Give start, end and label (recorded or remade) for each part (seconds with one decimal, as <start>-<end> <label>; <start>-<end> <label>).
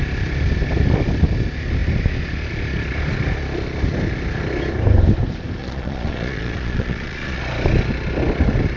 0.0-5.6 recorded; 5.6-7.4 remade; 7.4-8.8 recorded